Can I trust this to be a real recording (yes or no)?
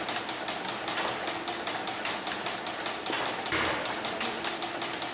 yes